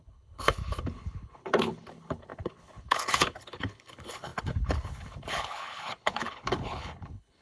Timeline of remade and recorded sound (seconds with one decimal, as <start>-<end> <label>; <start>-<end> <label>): 0.0-7.4 remade